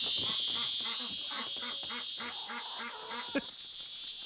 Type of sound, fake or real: real